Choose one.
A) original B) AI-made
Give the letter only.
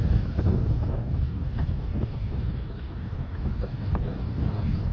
B